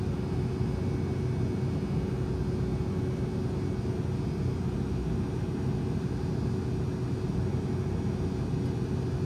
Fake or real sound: real